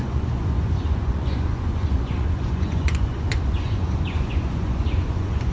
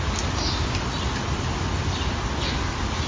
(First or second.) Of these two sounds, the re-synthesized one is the first